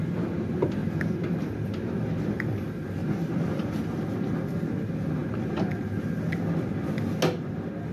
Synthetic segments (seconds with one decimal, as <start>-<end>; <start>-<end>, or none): 3.0-4.3